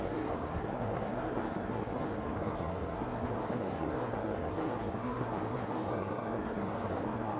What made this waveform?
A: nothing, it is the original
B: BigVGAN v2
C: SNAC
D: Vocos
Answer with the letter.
C